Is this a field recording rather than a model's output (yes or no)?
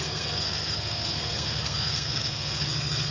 no